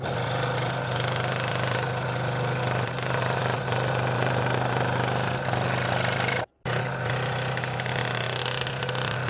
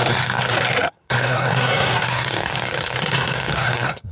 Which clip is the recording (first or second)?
first